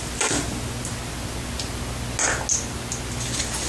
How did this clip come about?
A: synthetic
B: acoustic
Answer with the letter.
B